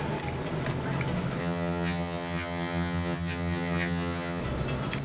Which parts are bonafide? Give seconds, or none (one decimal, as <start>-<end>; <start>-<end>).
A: 0.0-1.4; 4.4-5.0